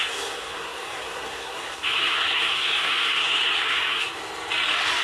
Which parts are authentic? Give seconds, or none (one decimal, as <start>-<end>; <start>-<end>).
4.2-5.0